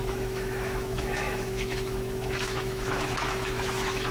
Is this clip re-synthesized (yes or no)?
yes